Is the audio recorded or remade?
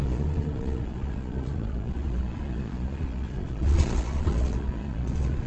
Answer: remade